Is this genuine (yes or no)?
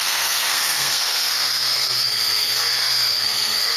no